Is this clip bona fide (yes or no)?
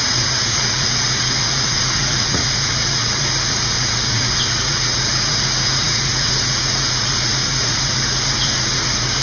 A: no